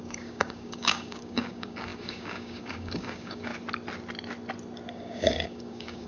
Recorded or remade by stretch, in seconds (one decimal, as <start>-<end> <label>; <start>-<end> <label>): 0.0-3.5 remade; 3.5-4.9 recorded; 4.9-6.1 remade

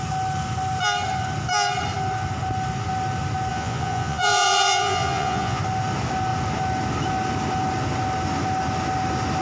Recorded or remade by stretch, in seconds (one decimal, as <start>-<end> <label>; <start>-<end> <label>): 0.0-3.5 recorded; 3.5-5.6 remade; 5.6-9.4 recorded

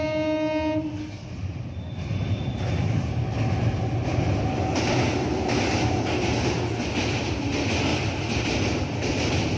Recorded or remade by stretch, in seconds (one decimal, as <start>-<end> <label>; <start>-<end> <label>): 0.0-9.6 recorded

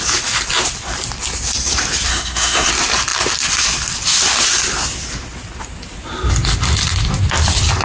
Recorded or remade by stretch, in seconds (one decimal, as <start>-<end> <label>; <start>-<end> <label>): 0.0-2.1 recorded; 2.1-2.7 remade; 2.7-7.8 recorded

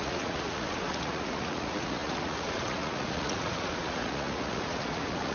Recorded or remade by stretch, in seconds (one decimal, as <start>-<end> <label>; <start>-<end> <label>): 0.0-5.3 remade